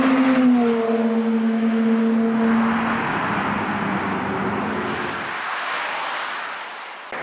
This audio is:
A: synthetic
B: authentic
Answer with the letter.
B